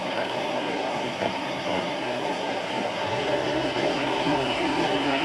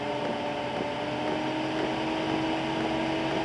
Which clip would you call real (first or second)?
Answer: second